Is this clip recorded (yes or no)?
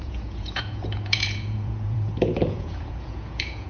no